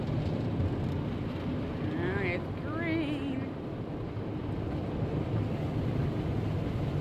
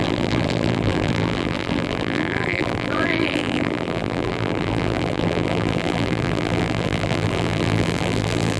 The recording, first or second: first